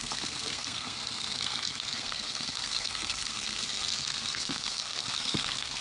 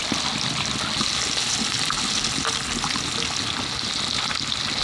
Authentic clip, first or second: second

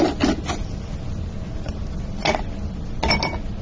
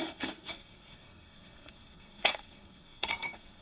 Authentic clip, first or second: first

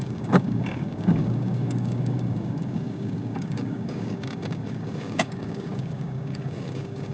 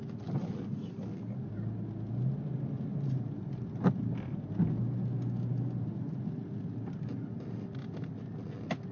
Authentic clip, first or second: second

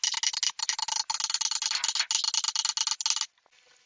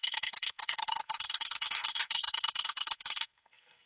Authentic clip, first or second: first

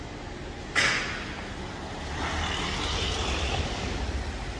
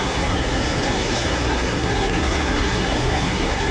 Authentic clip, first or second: first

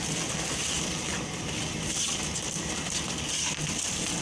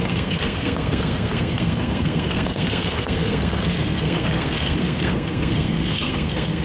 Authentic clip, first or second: first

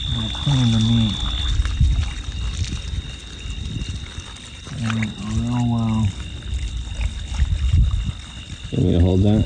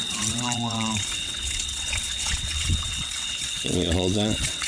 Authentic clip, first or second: first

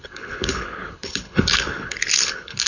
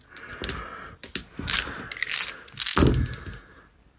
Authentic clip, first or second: second